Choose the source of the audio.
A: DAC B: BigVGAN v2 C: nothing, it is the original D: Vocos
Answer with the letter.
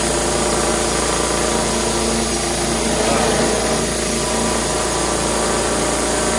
C